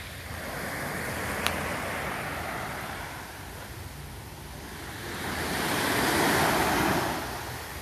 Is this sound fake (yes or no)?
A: no